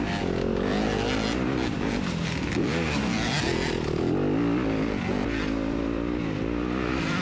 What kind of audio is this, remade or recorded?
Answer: recorded